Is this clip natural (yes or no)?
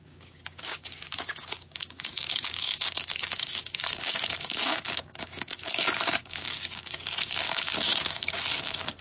no